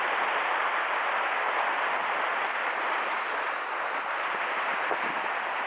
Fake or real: real